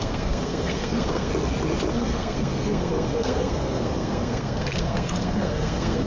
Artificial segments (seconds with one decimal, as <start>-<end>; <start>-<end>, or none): 0.0-1.3; 1.9-6.1